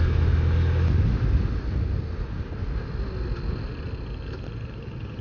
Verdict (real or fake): real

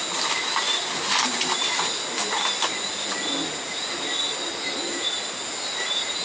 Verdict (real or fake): real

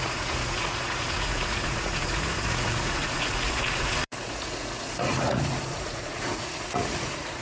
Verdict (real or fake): fake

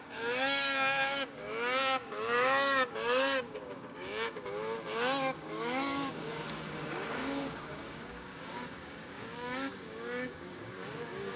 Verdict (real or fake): fake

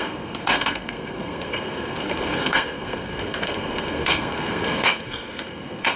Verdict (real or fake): fake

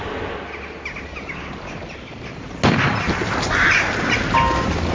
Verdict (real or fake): real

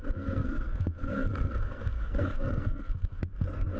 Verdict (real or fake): fake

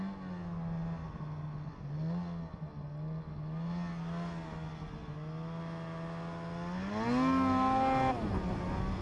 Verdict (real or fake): real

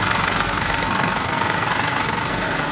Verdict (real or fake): fake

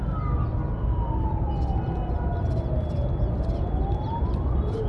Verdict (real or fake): real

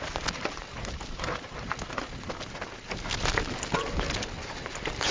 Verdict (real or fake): real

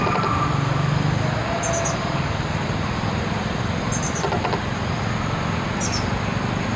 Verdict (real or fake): real